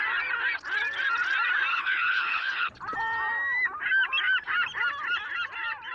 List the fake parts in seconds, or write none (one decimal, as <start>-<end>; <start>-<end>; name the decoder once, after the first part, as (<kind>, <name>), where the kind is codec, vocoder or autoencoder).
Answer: 1.7-2.7 (codec, HILCodec)